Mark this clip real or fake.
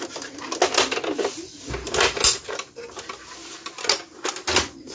real